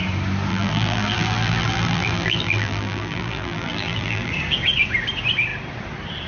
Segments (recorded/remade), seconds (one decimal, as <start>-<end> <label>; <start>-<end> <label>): 0.0-0.5 recorded; 0.5-4.3 remade; 4.3-6.3 recorded